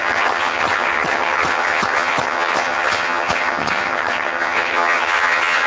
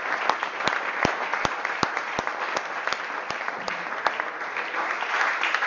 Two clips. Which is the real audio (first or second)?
second